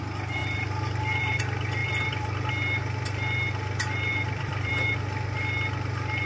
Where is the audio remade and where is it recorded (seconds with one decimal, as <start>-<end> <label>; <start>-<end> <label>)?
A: 0.0-0.4 recorded; 0.4-1.4 remade; 1.4-1.8 recorded; 1.8-2.5 remade; 2.5-4.1 recorded; 4.1-4.9 remade; 4.9-6.3 recorded